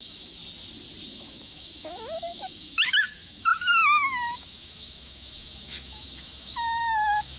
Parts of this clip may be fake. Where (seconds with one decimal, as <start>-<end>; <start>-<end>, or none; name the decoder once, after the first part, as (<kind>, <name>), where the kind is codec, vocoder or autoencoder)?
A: 0.0-0.4 (autoencoder, DAC-VAE); 1.1-7.4